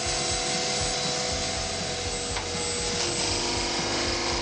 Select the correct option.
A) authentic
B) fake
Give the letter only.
A